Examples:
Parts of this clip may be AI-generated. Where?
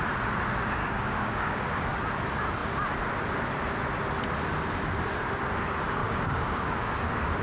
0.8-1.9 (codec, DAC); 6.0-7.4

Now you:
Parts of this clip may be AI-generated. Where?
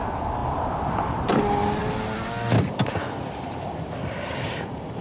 0.4-1.1 (vocoder, BigVGAN v2); 1.8-5.0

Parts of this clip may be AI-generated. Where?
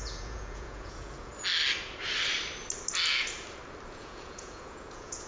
0.0-1.3 (vocoder, Vocos); 3.9-5.3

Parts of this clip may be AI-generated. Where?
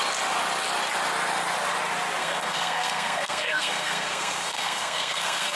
2.2-5.6 (codec, SNAC)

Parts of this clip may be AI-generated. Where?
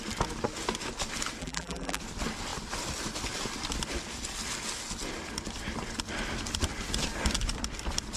1.4-2.0 (vocoder, BigVGAN v2)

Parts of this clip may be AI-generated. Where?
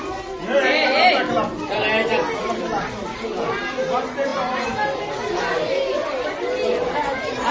none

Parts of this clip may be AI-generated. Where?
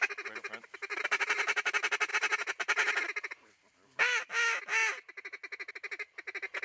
0.9-1.7 (vocoder, BigVGAN v2)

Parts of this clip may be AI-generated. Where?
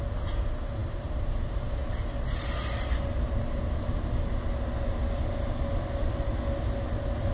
none